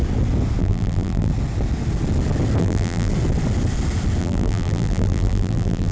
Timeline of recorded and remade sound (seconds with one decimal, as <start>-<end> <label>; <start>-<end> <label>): 0.0-0.6 recorded; 0.6-1.3 remade; 1.3-2.6 recorded; 2.6-3.1 remade; 3.1-4.2 recorded; 4.2-5.9 remade